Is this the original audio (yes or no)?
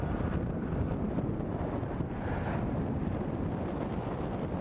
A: yes